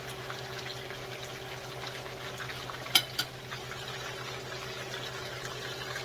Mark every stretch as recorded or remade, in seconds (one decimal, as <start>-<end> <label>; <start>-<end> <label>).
0.0-6.0 recorded